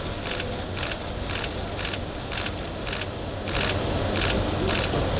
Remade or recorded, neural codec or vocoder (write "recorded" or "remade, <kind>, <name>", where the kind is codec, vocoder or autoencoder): recorded